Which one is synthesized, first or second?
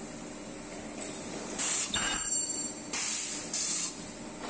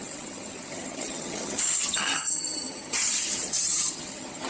second